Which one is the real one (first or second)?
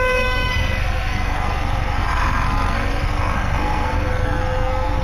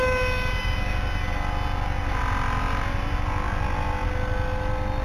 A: second